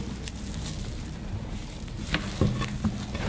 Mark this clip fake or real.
real